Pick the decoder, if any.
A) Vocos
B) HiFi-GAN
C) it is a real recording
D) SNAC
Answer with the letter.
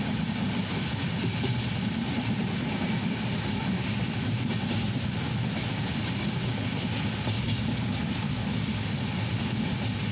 C